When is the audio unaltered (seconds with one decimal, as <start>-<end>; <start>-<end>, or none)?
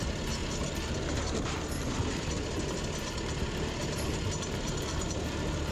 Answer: 0.4-1.4